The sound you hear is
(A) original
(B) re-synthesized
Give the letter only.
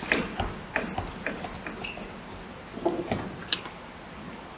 A